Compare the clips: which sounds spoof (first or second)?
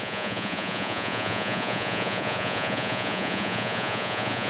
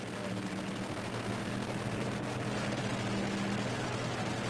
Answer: first